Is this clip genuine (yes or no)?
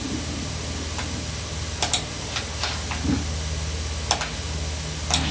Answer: yes